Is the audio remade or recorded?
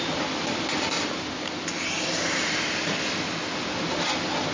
recorded